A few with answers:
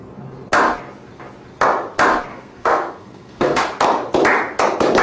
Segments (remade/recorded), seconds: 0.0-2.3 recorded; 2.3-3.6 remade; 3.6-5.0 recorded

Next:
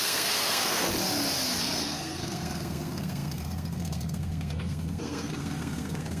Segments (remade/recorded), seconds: 0.0-0.9 remade; 0.9-1.6 recorded; 1.6-6.2 remade